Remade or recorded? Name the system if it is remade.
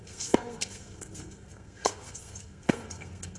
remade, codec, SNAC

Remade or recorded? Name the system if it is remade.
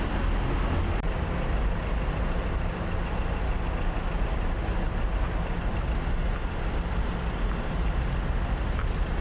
recorded